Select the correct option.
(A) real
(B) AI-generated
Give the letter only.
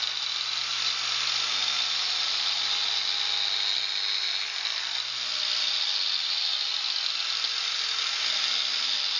A